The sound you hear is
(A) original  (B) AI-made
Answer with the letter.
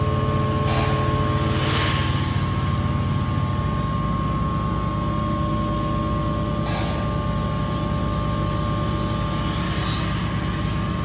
A